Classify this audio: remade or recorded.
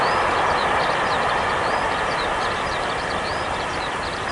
remade